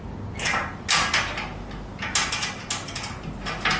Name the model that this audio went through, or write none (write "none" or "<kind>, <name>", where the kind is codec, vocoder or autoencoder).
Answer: none